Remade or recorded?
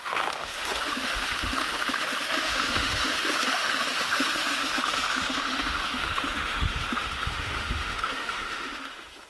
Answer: remade